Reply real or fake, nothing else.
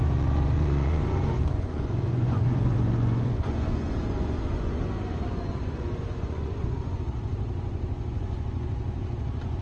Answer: fake